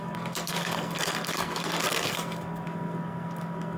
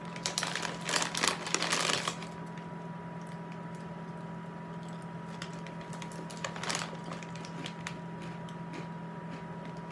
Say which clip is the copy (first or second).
first